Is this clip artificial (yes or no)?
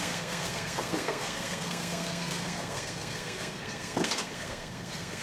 yes